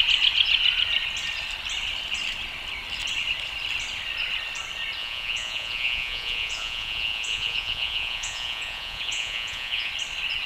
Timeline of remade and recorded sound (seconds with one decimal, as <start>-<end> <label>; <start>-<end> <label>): 0.0-5.0 recorded; 5.0-9.9 remade; 9.9-10.5 recorded